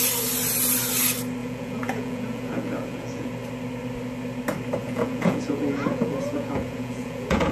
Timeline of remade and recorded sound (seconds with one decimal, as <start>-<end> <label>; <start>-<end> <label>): 0.0-1.4 recorded; 1.4-3.3 remade; 3.3-4.8 recorded; 4.8-7.5 remade